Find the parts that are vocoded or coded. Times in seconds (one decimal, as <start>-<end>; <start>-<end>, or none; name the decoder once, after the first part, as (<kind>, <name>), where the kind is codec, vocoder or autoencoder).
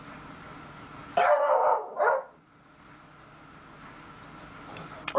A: none